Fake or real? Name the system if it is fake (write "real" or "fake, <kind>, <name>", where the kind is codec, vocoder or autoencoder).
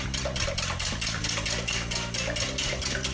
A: real